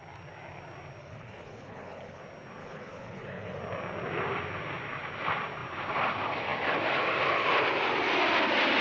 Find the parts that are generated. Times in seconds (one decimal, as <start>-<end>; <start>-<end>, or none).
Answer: 1.0-2.2; 2.6-3.6